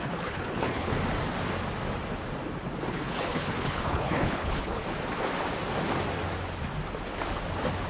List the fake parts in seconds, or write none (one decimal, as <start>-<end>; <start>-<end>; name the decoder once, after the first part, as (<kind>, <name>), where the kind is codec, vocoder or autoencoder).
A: 0.0-1.0 (codec, HILCodec); 2.9-4.8